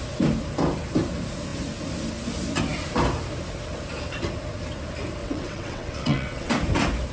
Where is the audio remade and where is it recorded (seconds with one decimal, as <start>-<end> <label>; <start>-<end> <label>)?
0.0-5.2 recorded; 5.2-6.5 remade; 6.5-7.1 recorded